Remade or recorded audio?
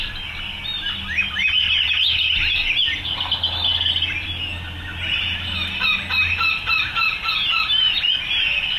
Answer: recorded